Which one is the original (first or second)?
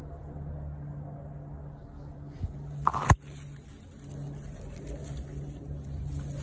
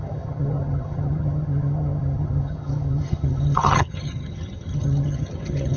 first